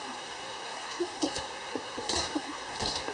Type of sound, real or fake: fake